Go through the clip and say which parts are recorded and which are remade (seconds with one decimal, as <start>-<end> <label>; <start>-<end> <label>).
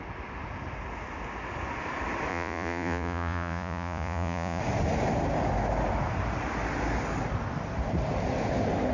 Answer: 0.0-2.3 recorded; 2.3-4.6 remade; 4.6-8.9 recorded